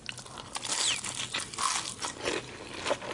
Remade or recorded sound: recorded